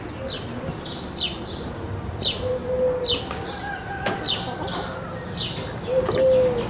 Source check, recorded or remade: recorded